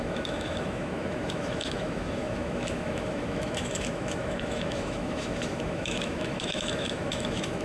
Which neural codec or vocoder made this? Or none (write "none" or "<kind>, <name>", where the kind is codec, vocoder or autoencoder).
autoencoder, DAC-VAE